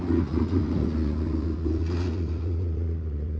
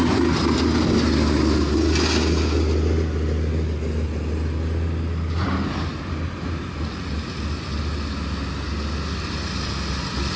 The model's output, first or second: first